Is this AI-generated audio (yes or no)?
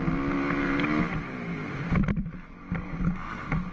no